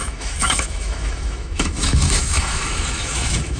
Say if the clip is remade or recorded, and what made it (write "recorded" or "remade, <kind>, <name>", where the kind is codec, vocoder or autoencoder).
remade, autoencoder, DAC-VAE